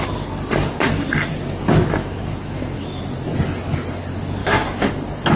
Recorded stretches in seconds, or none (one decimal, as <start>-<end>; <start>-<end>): 0.0-2.0; 3.0-4.4; 4.9-5.4